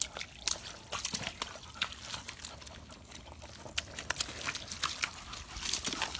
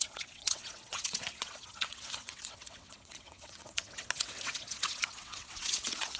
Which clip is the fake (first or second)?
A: second